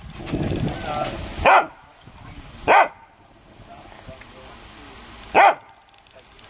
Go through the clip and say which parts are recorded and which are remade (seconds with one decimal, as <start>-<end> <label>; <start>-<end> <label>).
0.0-6.5 recorded